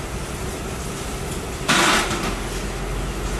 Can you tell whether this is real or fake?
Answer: real